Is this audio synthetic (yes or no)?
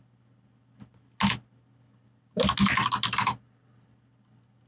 no